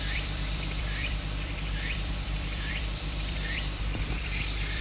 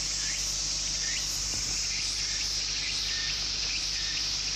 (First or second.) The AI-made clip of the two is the first